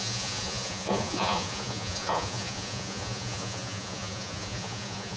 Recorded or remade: remade